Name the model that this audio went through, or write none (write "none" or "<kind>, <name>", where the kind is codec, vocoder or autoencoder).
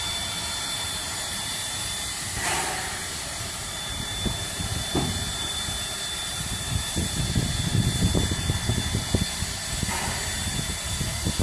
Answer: vocoder, BigVGAN v2